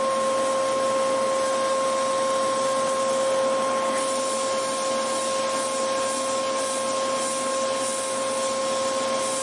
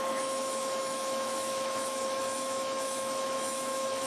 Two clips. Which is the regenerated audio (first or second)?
second